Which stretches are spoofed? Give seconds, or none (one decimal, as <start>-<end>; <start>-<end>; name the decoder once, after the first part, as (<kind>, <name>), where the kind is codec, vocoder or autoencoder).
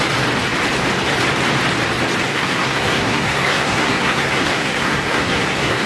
2.3-5.9 (codec, SNAC)